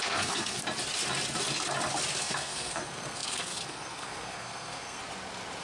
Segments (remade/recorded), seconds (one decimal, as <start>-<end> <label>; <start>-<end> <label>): 0.0-0.6 remade; 0.6-2.2 recorded; 2.2-5.0 remade; 5.0-5.6 recorded